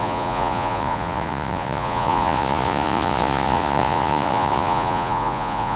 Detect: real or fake fake